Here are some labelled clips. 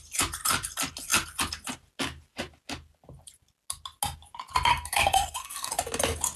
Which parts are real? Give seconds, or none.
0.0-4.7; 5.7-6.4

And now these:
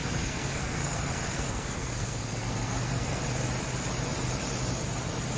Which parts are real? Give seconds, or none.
3.2-5.4

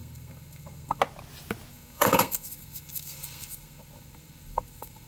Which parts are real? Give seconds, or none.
1.0-1.7